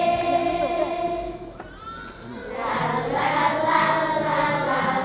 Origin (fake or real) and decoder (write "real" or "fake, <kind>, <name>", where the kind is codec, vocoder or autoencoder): real